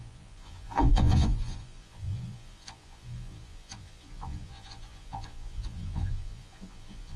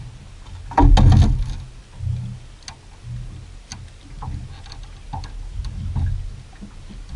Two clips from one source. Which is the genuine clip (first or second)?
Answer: second